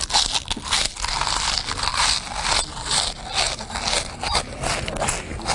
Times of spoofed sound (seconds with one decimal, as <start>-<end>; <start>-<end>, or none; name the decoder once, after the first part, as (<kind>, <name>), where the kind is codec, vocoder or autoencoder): none